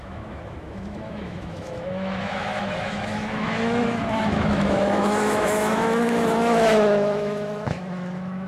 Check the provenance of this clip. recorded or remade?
remade